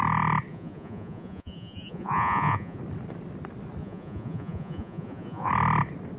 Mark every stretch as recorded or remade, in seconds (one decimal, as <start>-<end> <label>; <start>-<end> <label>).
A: 0.0-0.5 recorded; 0.5-2.8 remade; 2.8-3.8 recorded; 3.8-5.5 remade; 5.5-6.2 recorded